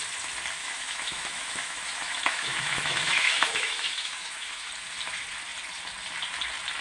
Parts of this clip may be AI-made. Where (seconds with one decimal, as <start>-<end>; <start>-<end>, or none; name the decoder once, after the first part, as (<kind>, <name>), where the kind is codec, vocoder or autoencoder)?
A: 0.6-4.7 (autoencoder, DAC-VAE)